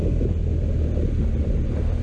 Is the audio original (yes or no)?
yes